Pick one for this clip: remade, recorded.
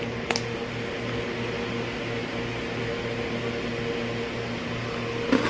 recorded